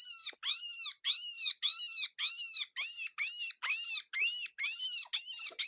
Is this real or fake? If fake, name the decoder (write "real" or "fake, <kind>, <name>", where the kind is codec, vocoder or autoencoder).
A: real